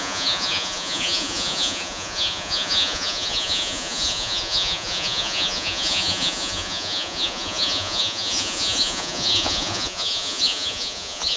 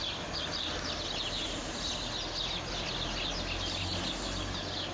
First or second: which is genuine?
second